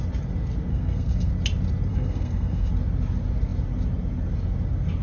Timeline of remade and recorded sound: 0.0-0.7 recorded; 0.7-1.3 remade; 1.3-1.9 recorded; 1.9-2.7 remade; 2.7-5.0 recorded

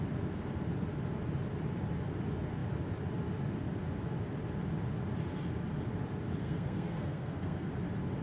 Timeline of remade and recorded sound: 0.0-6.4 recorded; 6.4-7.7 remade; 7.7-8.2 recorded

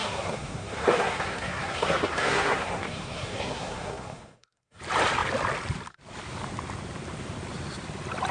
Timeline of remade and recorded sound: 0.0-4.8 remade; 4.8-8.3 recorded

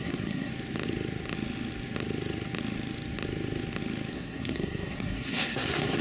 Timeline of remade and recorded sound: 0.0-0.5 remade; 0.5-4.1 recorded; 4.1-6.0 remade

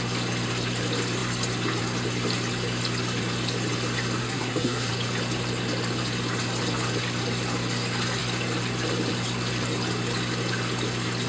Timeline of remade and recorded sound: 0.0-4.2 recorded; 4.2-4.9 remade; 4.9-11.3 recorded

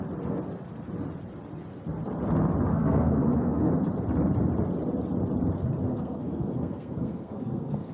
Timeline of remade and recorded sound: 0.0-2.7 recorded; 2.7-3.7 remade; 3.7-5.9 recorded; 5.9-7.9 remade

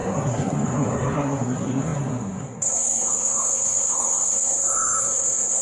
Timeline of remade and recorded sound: 0.0-5.6 remade

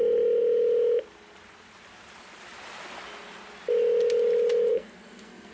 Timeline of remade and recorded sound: 0.0-4.7 recorded; 4.7-5.5 remade